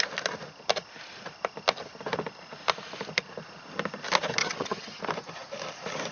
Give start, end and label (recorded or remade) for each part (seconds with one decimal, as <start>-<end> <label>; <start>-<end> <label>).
0.0-4.4 recorded; 4.4-5.0 remade; 5.0-6.1 recorded

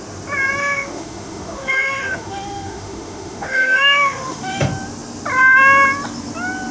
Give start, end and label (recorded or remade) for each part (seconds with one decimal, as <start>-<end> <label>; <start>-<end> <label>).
0.0-0.6 recorded; 0.6-4.6 remade; 4.6-6.7 recorded

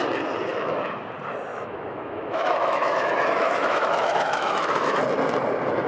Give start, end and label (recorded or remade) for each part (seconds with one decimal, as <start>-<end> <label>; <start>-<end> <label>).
0.0-0.5 recorded; 0.5-1.0 remade; 1.0-1.5 recorded; 1.5-5.0 remade; 5.0-5.9 recorded

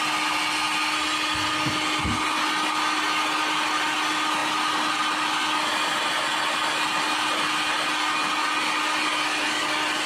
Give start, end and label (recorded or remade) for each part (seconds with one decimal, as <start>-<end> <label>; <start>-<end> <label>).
0.0-10.1 recorded

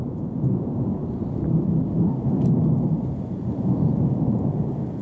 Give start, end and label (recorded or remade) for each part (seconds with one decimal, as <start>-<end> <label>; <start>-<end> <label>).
0.0-1.0 remade; 1.0-3.3 recorded; 3.3-5.0 remade

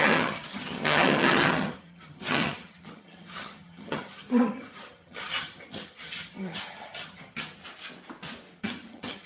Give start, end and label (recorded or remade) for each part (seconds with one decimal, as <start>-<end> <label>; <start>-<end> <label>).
0.0-7.6 remade; 7.6-8.6 recorded; 8.6-9.3 remade

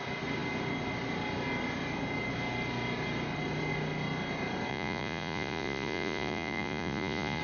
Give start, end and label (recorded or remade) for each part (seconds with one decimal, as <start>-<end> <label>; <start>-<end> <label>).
0.0-4.7 recorded; 4.7-7.4 remade